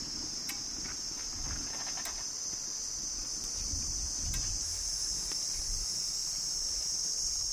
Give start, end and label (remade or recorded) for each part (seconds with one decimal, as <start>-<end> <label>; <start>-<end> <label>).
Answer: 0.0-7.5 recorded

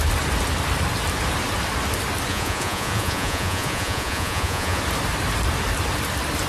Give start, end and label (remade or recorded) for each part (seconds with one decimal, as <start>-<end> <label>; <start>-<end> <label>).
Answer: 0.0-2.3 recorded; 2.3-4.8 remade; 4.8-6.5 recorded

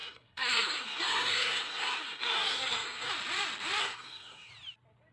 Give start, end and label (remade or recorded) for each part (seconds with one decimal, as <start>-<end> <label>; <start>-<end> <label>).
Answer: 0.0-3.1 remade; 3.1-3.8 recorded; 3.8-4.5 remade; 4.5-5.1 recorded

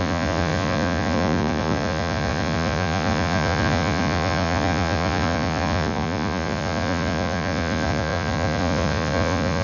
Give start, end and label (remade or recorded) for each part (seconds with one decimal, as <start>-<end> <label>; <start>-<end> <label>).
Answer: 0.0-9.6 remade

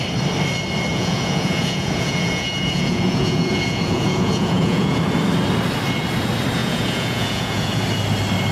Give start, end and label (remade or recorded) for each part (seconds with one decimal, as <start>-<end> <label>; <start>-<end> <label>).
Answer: 0.0-0.9 recorded; 0.9-5.0 remade; 5.0-6.6 recorded; 6.6-7.8 remade; 7.8-8.5 recorded